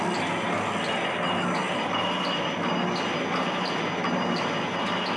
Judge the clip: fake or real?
real